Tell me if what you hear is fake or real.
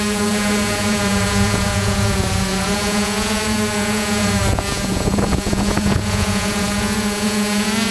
fake